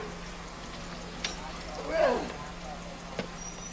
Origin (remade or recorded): recorded